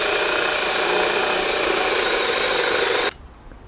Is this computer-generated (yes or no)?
no